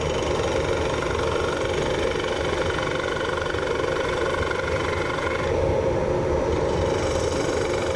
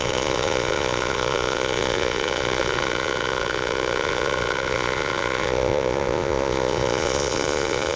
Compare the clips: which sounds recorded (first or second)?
first